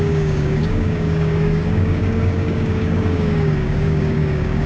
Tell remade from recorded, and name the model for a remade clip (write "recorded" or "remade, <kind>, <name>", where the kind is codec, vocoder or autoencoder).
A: remade, codec, DAC